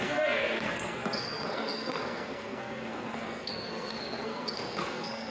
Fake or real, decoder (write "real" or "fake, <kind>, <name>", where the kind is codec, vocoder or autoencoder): fake, codec, SNAC